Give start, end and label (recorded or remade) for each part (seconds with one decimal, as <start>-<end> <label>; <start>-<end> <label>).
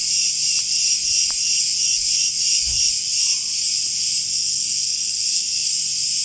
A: 0.0-4.3 recorded; 4.3-5.7 remade; 5.7-6.2 recorded